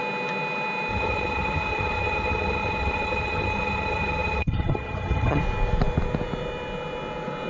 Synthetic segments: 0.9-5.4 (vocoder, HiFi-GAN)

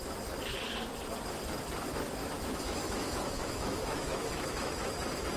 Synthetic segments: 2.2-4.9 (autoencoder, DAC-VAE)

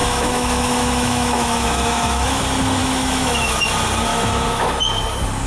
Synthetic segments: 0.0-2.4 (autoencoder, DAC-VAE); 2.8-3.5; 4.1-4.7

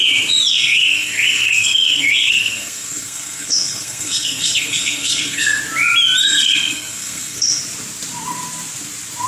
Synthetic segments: 0.5-5.6 (codec, SNAC); 6.2-7.6

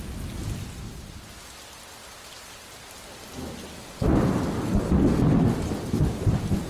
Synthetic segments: none

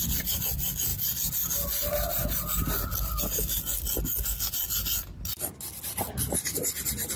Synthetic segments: none

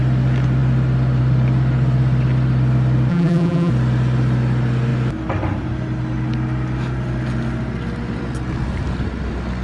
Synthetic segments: 3.1-3.7 (vocoder, BigVGAN v2)

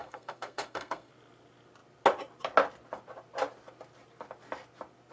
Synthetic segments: 0.0-1.1 (codec, SNAC)